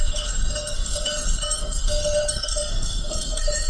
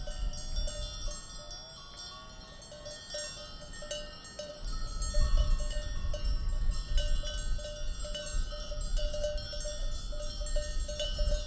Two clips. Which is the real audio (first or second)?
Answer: second